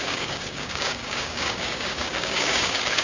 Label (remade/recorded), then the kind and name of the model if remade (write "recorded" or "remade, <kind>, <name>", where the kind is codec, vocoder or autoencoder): remade, codec, DAC